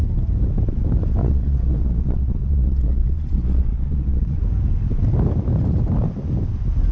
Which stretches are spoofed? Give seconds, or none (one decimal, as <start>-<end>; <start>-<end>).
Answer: 1.2-4.4